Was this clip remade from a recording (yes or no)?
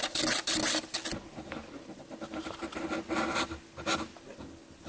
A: no